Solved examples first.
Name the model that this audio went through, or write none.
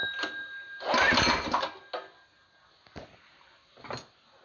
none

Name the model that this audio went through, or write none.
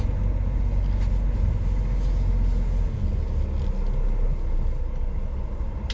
none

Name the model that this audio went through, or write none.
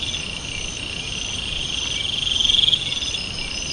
none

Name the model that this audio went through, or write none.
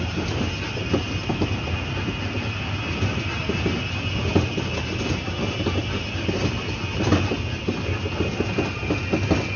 none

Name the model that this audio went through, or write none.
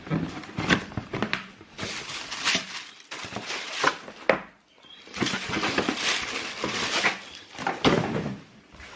none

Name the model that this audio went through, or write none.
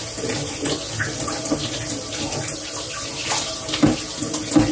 none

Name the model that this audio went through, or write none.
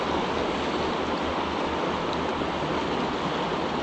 none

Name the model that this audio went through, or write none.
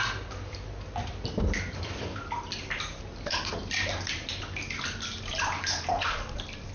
none